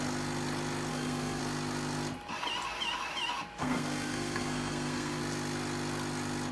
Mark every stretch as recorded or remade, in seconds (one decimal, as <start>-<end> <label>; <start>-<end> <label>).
0.0-0.9 recorded; 0.9-1.4 remade; 1.4-3.6 recorded; 3.6-5.2 remade; 5.2-6.5 recorded